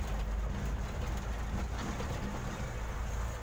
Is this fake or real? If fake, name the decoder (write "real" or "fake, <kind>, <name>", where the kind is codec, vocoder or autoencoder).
real